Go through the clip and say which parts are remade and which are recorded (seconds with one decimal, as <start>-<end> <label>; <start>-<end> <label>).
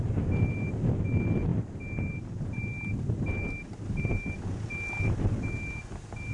0.0-6.3 recorded